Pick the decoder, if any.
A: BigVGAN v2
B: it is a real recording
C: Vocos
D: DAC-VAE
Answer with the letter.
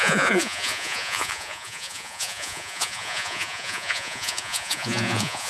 C